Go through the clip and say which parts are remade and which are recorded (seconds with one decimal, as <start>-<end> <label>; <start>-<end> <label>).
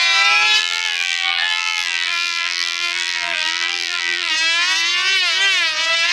0.0-0.6 recorded; 0.6-4.3 remade; 4.3-6.1 recorded